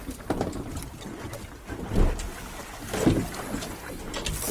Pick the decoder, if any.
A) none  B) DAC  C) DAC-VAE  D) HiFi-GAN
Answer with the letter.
A